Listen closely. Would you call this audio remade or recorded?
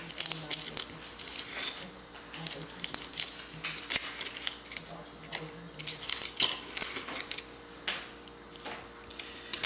recorded